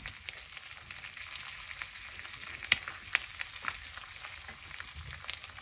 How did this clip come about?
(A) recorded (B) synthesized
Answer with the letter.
A